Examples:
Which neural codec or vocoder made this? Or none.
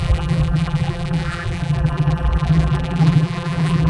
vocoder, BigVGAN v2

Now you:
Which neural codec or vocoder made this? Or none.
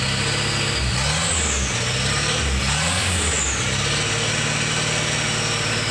none